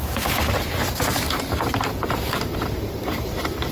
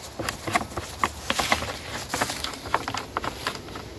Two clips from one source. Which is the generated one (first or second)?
first